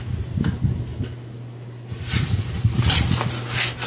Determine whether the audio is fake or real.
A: real